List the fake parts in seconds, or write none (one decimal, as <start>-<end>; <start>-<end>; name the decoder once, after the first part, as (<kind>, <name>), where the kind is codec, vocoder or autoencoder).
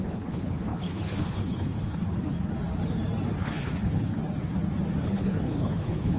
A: 0.0-2.0 (codec, HILCodec); 3.4-4.2; 5.0-6.2